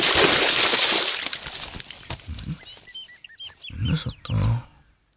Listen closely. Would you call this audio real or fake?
real